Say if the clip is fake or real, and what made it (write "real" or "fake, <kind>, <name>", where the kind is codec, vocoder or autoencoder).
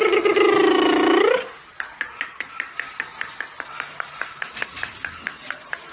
real